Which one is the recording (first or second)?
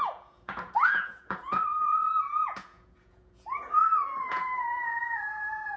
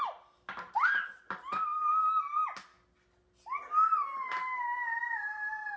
second